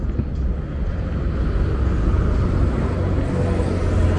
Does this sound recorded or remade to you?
recorded